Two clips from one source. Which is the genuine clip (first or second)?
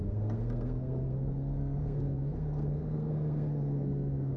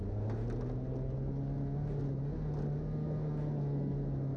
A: second